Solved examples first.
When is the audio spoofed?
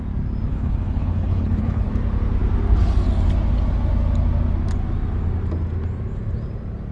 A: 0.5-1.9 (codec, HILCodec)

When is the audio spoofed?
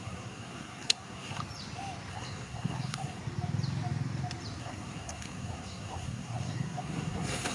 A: 0.0-1.4 (codec, SNAC); 2.1-3.2; 4.6-7.5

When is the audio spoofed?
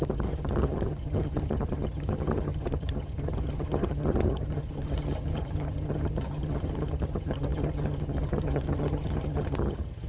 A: 0.0-10.1 (vocoder, HiFi-GAN)